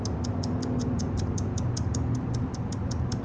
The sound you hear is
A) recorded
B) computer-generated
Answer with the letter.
A